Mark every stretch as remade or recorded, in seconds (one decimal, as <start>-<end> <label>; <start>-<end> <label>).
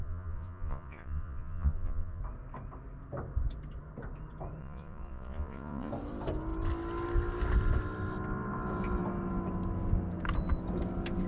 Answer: 0.0-2.2 remade; 2.2-4.6 recorded; 4.6-5.9 remade; 5.9-11.3 recorded